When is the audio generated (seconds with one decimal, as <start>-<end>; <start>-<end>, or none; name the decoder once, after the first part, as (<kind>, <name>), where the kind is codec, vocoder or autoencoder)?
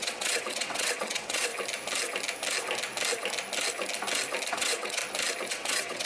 0.0-1.5 (vocoder, WaveNeXt); 4.5-5.0; 5.5-6.1